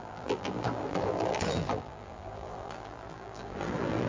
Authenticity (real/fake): fake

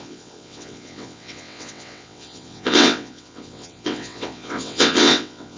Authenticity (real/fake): fake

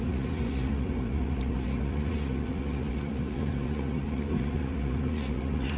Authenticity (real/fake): fake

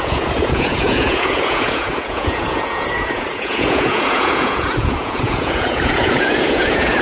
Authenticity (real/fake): fake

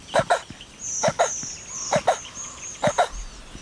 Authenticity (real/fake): real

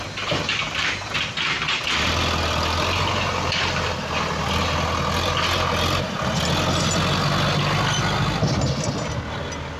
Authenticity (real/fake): real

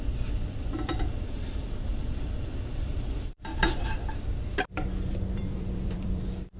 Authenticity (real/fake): fake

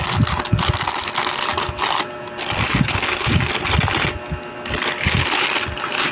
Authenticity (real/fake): real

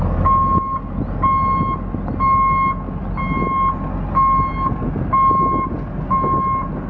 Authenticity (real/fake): real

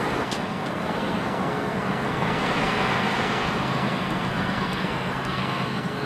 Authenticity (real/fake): fake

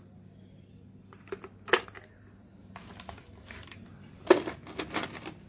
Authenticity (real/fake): real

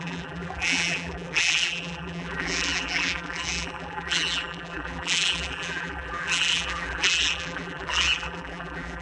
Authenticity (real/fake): fake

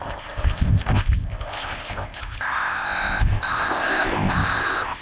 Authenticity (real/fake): fake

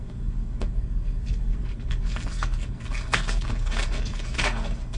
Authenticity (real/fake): fake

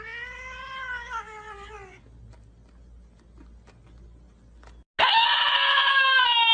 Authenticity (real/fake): real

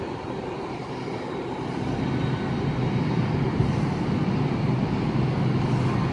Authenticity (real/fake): fake